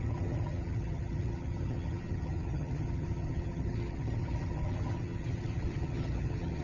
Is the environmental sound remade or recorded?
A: remade